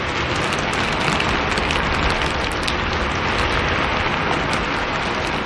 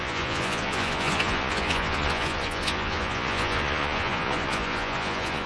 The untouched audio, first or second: first